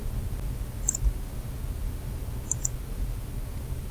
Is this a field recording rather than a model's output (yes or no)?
yes